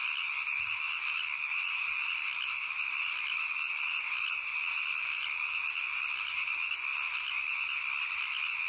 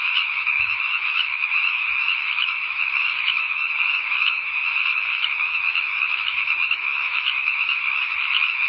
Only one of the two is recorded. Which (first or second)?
first